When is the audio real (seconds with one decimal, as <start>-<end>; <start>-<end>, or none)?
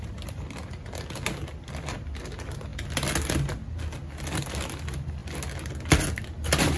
0.0-6.8